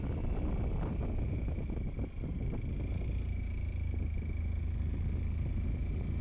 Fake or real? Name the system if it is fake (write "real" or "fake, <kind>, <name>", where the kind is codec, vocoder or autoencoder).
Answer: real